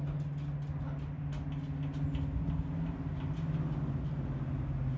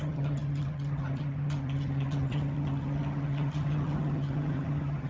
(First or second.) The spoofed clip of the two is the second